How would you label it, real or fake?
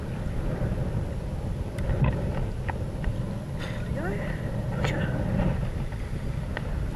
real